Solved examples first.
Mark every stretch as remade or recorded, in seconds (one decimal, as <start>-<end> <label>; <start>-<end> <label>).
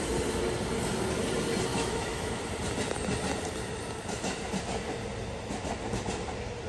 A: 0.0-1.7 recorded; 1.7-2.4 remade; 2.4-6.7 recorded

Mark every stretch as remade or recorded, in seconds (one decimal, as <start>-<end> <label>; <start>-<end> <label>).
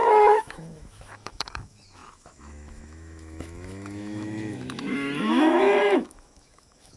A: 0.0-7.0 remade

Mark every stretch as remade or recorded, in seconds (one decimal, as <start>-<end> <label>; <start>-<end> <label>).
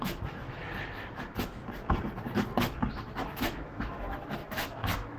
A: 0.0-1.6 remade; 1.6-2.9 recorded; 2.9-5.2 remade